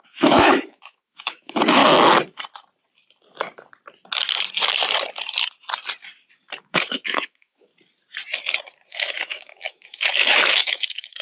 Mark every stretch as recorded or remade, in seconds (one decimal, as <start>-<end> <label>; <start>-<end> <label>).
0.0-1.8 remade; 1.8-6.6 recorded; 6.6-7.7 remade; 7.7-8.9 recorded; 8.9-11.2 remade